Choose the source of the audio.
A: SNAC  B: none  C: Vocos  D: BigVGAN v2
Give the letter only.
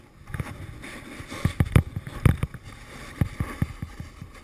B